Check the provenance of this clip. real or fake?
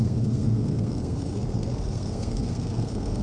fake